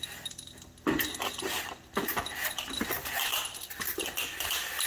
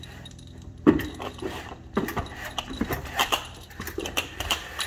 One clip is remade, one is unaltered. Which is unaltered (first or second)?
first